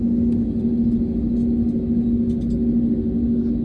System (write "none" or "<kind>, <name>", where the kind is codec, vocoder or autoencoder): none